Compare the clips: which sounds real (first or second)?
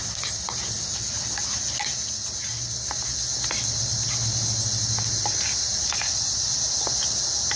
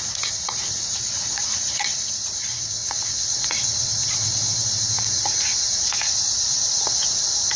first